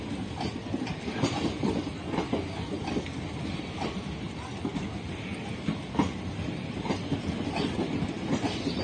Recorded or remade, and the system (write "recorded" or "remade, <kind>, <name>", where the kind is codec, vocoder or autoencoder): recorded